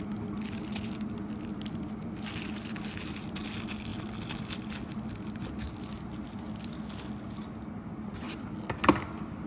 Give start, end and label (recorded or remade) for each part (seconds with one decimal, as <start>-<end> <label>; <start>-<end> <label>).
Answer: 0.0-9.5 recorded